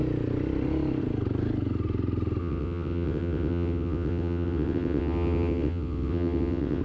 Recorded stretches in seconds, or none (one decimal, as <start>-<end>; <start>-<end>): 0.0-2.4